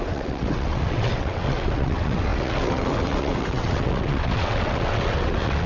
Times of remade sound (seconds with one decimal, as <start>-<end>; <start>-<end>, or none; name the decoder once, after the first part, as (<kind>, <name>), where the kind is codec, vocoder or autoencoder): 0.0-5.7 (vocoder, WaveNeXt)